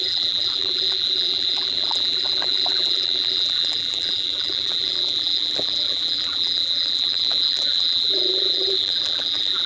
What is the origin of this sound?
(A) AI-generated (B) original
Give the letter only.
A